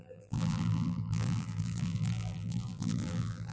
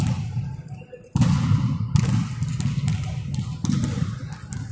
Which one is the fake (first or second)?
first